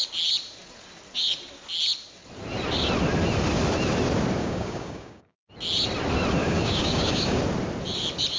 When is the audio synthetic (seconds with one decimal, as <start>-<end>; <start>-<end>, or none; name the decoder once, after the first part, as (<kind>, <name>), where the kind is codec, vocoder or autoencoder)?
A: 4.4-5.5 (codec, DAC); 6.4-7.4